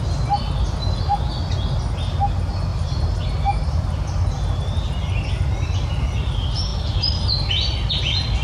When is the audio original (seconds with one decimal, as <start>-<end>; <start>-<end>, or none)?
0.0-2.7; 4.1-8.4